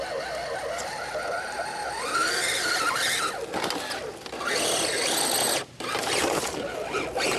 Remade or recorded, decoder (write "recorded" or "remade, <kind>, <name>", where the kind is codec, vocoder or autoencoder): recorded